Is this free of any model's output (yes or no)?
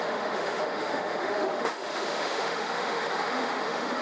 no